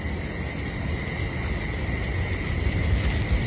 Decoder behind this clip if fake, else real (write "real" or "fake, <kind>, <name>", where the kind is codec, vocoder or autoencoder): real